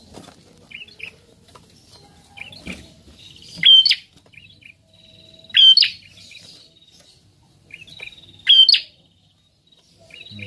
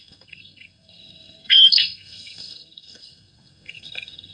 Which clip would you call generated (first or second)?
second